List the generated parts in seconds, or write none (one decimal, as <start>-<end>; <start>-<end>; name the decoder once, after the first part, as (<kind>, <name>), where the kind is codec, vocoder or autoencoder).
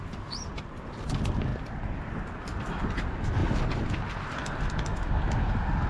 none